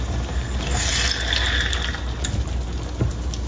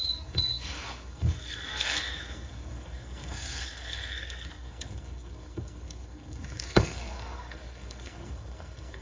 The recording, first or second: first